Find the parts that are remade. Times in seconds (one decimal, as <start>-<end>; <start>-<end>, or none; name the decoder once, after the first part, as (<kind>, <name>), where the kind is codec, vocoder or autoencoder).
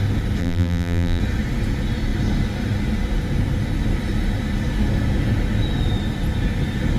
0.4-1.2 (vocoder, BigVGAN v2)